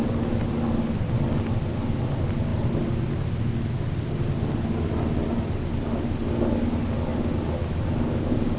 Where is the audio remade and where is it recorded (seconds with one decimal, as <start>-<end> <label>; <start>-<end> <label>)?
0.0-8.6 recorded